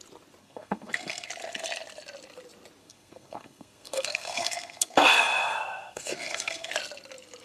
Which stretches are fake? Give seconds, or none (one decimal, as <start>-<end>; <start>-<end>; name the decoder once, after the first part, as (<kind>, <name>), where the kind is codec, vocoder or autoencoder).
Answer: 0.4-1.3 (codec, SNAC); 2.8-6.7